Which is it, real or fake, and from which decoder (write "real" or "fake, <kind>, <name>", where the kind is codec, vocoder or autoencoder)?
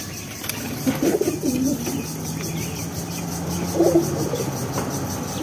real